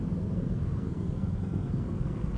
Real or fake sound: fake